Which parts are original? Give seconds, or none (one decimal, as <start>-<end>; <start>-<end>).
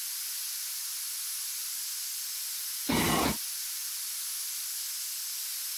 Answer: 0.0-5.8